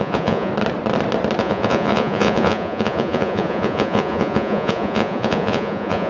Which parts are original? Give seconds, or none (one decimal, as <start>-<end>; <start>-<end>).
0.5-1.4